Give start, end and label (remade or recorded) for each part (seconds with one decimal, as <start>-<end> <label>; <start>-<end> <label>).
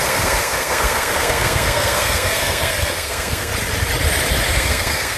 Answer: 0.0-3.5 remade; 3.5-4.5 recorded; 4.5-5.2 remade